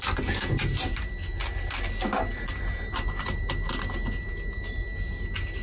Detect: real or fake real